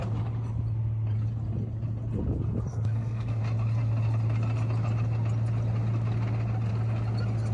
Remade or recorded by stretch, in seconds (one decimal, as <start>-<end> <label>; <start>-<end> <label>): 0.0-2.7 recorded; 2.7-3.4 remade; 3.4-7.5 recorded